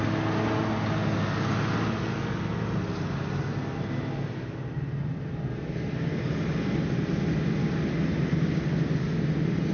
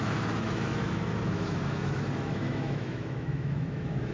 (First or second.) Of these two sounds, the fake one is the second